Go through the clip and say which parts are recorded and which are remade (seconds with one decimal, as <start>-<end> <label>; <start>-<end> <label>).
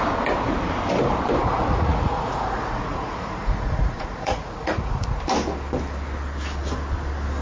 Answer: 0.0-1.4 recorded; 1.4-5.2 remade; 5.2-7.4 recorded